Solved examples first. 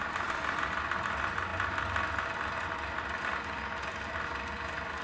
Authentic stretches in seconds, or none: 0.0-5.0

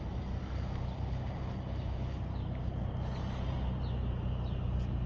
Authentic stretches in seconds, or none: 0.0-5.1

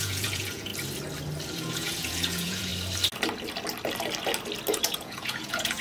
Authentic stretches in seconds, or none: 0.7-1.5; 2.7-4.7

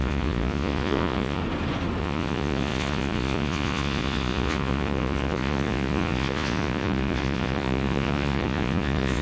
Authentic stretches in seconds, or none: 1.4-2.0

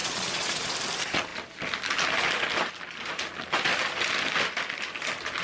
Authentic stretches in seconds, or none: 0.7-5.4